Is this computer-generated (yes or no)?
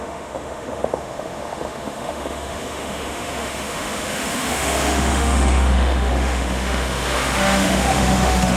yes